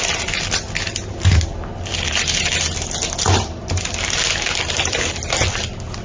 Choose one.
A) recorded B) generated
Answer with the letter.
A